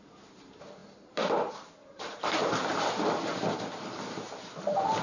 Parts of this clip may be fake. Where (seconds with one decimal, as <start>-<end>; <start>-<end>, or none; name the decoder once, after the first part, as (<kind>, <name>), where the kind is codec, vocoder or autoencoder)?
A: 0.0-2.4 (vocoder, BigVGAN v2); 4.6-5.0